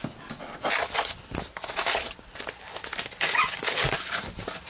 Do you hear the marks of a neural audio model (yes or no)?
no